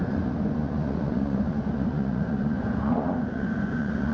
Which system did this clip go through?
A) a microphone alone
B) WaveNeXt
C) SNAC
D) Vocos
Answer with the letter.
D